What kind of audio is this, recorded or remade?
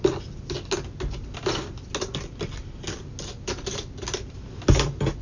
recorded